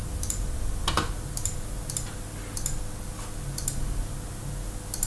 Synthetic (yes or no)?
no